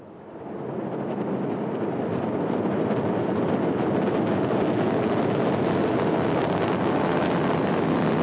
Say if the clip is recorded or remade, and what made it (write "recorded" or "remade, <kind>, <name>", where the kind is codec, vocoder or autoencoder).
recorded